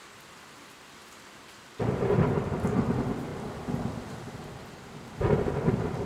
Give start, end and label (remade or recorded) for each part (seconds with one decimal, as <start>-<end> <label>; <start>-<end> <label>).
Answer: 0.0-6.1 recorded